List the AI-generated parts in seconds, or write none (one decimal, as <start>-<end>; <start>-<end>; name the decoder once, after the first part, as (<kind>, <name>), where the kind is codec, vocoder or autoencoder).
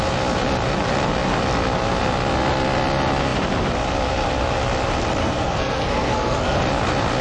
5.2-6.6 (codec, SNAC)